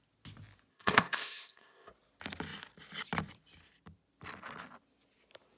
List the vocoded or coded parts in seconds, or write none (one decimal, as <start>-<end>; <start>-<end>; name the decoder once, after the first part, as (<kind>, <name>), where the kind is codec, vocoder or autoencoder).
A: 0.7-1.9 (codec, ZipCodec)